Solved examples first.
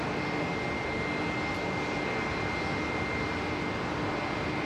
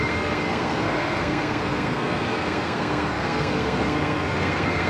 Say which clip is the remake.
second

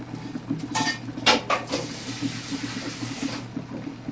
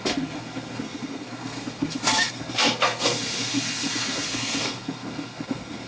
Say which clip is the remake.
second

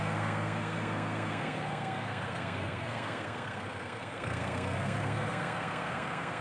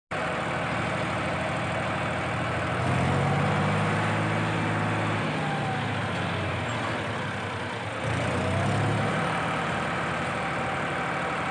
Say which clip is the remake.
first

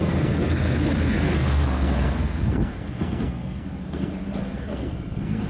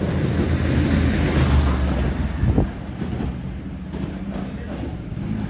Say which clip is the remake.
first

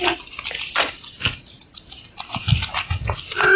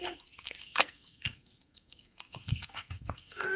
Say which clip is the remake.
second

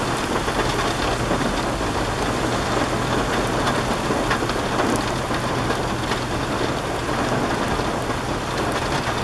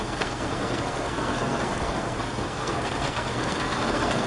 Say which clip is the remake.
second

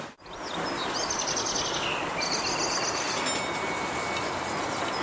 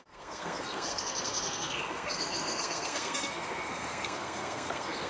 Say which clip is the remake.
second